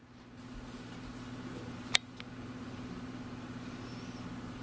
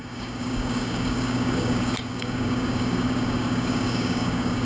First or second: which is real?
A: first